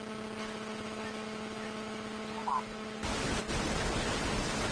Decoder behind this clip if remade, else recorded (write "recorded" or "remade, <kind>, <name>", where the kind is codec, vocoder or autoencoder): recorded